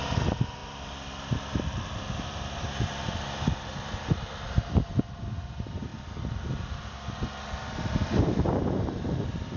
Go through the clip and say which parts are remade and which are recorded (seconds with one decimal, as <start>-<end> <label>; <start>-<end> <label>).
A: 0.0-0.6 recorded; 0.6-5.1 remade; 5.1-5.9 recorded; 5.9-7.1 remade; 7.1-9.6 recorded